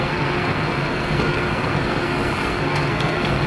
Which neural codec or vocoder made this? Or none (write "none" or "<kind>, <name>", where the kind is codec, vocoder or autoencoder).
codec, SNAC